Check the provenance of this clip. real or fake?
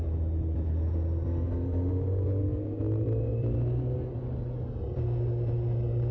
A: real